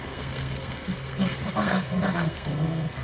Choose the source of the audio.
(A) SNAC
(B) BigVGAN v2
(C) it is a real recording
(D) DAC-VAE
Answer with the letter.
A